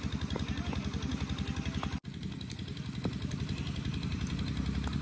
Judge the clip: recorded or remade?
recorded